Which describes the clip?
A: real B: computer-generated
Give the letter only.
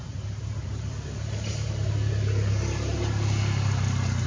A